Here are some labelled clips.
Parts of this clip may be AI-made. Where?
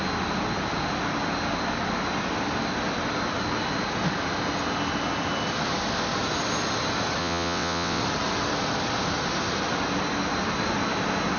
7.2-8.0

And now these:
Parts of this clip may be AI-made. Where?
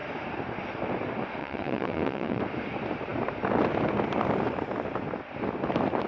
1.4-2.4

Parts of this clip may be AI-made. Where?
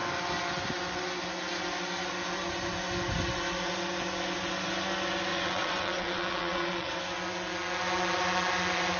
5.3-6.9